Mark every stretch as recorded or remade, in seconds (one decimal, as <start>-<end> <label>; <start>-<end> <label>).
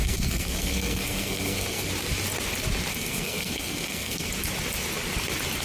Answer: 0.0-1.9 remade; 1.9-2.9 recorded; 2.9-4.3 remade; 4.3-5.6 recorded